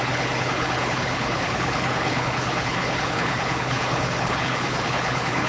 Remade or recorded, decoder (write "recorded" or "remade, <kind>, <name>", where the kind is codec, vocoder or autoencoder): remade, codec, HILCodec